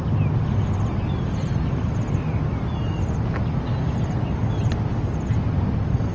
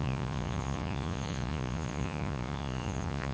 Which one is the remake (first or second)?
second